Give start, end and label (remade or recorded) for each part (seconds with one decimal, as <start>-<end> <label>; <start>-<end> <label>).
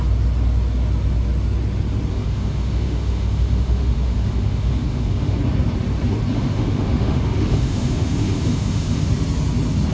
0.0-2.1 recorded; 2.1-5.4 remade; 5.4-6.3 recorded; 6.3-9.1 remade; 9.1-9.9 recorded